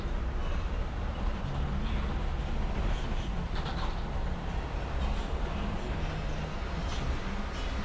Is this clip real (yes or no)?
yes